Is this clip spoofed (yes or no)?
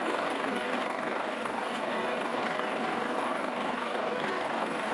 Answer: yes